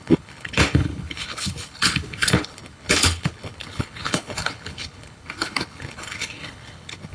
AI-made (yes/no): yes